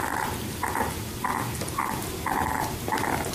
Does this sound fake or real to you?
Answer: real